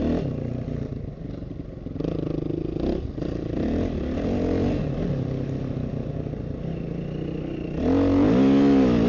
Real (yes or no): yes